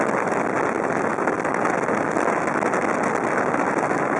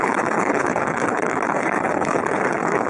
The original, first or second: first